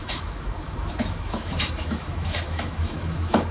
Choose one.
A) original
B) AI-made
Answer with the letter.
B